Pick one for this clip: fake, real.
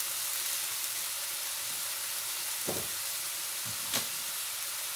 fake